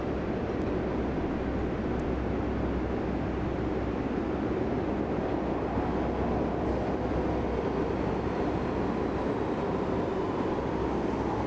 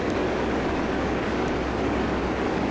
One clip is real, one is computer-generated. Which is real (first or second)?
first